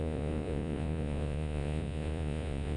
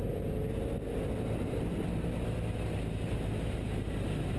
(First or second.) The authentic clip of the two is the second